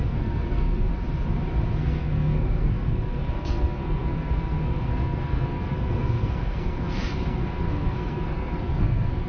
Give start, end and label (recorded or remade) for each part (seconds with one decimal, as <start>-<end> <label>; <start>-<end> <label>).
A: 0.0-0.9 remade; 0.9-1.8 recorded; 1.8-9.3 remade